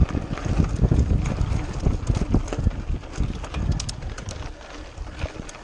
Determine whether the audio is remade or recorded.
recorded